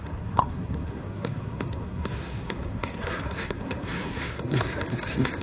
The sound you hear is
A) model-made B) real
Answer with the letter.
A